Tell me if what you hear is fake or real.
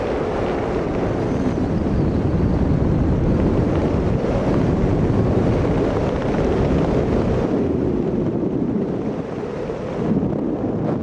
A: real